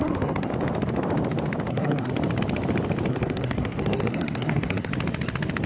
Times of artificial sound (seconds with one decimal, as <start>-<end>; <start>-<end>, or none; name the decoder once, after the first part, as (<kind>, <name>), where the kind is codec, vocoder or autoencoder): 0.0-0.5 (codec, SNAC); 1.7-2.1; 3.1-4.9